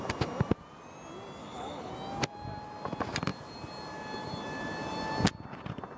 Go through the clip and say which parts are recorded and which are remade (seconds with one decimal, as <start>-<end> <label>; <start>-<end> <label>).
0.0-1.4 recorded; 1.4-1.9 remade; 1.9-6.0 recorded

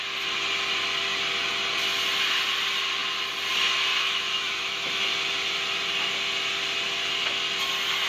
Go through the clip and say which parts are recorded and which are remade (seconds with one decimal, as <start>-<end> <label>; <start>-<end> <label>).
0.0-3.9 recorded; 3.9-5.1 remade; 5.1-8.1 recorded

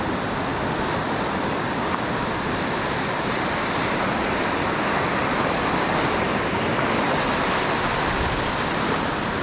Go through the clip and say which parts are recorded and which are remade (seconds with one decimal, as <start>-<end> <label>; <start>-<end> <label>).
0.0-9.4 recorded

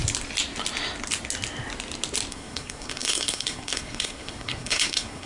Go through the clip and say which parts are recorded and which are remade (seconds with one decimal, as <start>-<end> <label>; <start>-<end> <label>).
0.0-2.3 recorded; 2.3-5.3 remade

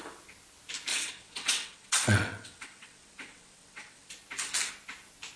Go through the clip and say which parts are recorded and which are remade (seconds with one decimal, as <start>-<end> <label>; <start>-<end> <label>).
0.0-0.9 recorded; 0.9-4.1 remade; 4.1-5.4 recorded

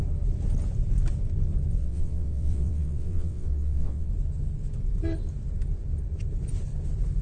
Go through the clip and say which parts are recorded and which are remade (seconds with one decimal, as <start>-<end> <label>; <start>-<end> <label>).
0.0-1.8 recorded; 1.8-4.1 remade; 4.1-7.2 recorded

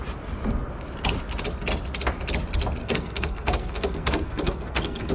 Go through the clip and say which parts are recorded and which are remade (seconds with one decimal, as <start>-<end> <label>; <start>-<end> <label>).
0.0-2.8 recorded; 2.8-5.1 remade

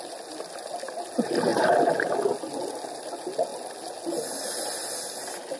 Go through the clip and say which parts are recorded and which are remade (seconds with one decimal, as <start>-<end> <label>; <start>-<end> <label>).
0.0-5.6 recorded